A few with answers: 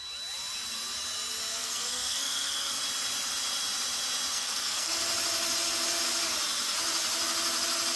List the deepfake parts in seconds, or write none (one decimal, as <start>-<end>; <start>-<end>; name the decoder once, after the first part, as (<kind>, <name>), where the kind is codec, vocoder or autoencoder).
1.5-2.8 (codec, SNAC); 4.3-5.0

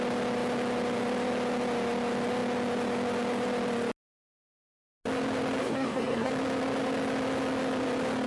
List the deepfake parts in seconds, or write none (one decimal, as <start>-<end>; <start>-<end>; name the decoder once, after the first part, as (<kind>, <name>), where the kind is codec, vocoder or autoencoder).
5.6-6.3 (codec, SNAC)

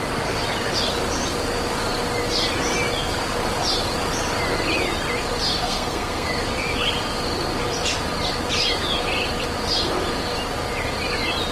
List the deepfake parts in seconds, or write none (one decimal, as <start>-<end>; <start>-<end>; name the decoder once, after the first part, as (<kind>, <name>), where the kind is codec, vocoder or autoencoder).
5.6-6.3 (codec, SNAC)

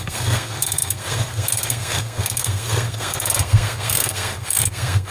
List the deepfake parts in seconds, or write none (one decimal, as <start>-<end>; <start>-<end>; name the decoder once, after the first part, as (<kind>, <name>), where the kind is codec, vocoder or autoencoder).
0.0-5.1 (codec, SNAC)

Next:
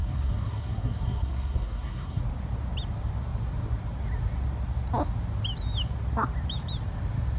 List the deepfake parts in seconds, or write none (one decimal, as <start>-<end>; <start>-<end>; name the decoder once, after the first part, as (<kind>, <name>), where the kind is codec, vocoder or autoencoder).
0.0-2.2 (codec, SNAC)

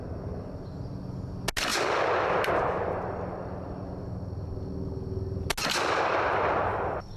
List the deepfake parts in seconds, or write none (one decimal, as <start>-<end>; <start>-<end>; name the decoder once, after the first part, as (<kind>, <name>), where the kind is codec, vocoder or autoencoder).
none